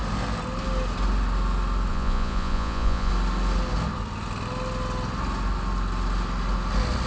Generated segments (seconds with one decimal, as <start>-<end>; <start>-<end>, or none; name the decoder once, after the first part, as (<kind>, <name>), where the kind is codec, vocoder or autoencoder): 1.9-3.1 (vocoder, Vocos)

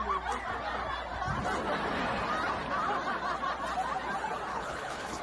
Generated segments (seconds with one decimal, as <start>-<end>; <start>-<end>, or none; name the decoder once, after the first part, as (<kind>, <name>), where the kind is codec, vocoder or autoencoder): 4.5-5.2 (codec, HILCodec)